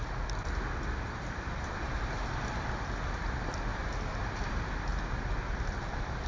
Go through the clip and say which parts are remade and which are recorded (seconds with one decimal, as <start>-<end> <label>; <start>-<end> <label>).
0.0-3.7 remade; 3.7-4.4 recorded; 4.4-4.9 remade; 4.9-5.6 recorded; 5.6-6.3 remade